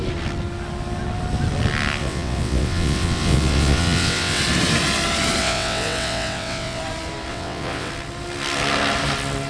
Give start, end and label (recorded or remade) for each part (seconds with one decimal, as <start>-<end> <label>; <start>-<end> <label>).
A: 0.0-2.0 recorded; 2.0-4.4 remade; 4.4-5.4 recorded; 5.4-6.8 remade; 6.8-7.3 recorded; 7.3-7.9 remade; 7.9-9.5 recorded